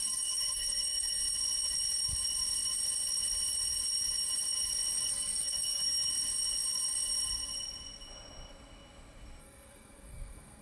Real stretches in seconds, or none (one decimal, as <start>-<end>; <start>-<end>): 1.2-5.1; 6.1-9.4